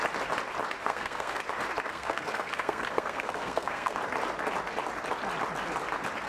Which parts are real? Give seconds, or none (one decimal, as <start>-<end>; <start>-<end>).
0.0-0.8; 1.4-1.9; 4.0-6.3